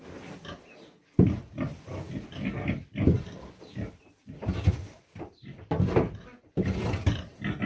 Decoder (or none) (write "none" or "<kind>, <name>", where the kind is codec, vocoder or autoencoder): none